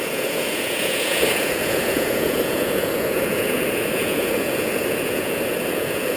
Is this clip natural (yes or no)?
no